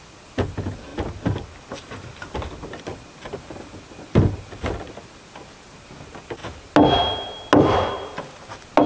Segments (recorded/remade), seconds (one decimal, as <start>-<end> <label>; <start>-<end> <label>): 0.0-0.9 recorded; 0.9-2.8 remade; 2.8-8.9 recorded